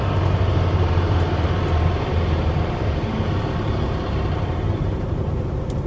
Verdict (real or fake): fake